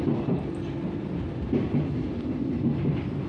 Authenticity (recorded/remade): recorded